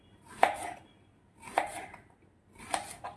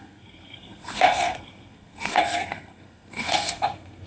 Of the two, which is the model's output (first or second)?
second